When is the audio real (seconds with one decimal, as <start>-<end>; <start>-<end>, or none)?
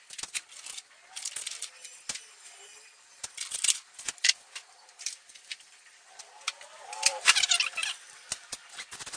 0.0-2.7; 6.2-9.2